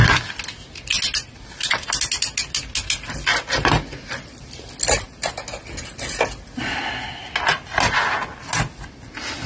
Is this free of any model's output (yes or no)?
yes